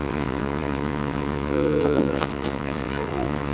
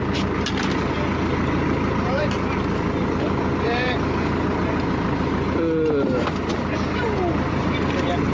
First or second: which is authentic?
second